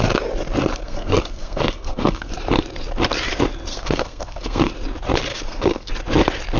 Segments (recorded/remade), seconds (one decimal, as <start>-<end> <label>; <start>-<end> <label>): 0.0-0.7 recorded; 0.7-2.3 remade; 2.3-3.7 recorded; 3.7-4.7 remade; 4.7-5.3 recorded; 5.3-5.9 remade; 5.9-6.6 recorded

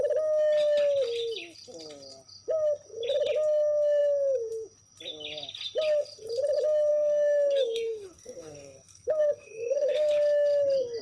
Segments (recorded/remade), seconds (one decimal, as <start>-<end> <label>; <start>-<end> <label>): 0.0-6.9 recorded; 6.9-10.1 remade; 10.1-11.0 recorded

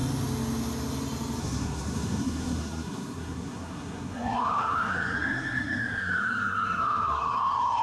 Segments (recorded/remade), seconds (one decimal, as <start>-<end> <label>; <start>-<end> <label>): 0.0-1.4 recorded; 1.4-7.8 remade

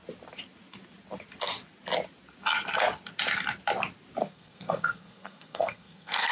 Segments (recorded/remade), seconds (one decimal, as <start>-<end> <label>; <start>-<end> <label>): 0.0-4.2 recorded; 4.2-6.3 remade

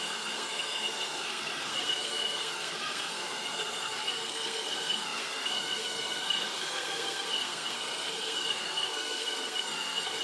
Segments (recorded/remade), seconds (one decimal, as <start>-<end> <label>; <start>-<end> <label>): 0.0-10.2 remade

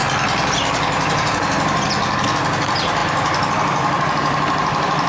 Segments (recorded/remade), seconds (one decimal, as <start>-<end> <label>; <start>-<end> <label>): 0.0-5.1 recorded